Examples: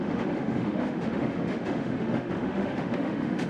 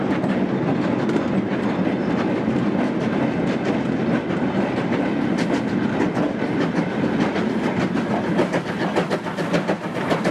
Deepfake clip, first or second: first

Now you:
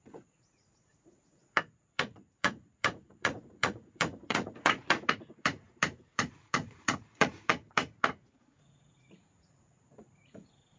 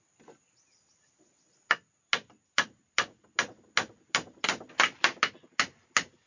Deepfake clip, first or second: first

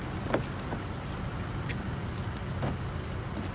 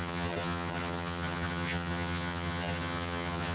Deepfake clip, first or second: second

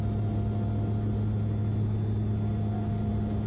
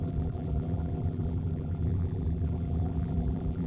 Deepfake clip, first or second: second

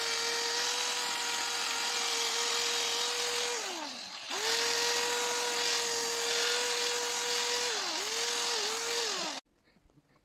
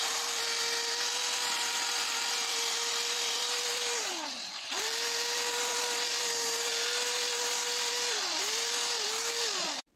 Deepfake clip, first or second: second